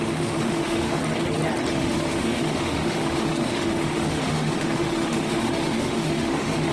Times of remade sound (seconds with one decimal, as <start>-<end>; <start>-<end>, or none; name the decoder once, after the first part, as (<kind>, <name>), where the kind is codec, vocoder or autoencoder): 0.0-1.0 (autoencoder, DAC-VAE); 1.7-6.7